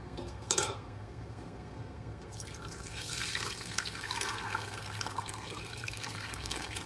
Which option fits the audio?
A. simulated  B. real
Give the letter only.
A